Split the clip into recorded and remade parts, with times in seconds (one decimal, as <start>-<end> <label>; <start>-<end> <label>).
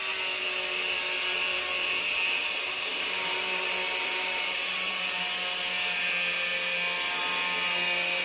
0.0-2.9 recorded; 2.9-5.2 remade; 5.2-8.2 recorded